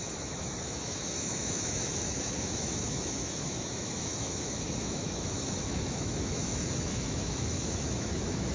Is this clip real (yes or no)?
no